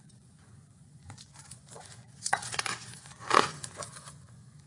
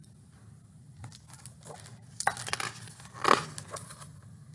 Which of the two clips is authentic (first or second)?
second